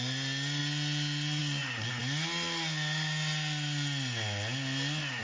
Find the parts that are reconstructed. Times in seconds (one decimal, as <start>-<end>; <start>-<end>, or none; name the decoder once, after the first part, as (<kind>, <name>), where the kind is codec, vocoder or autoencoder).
none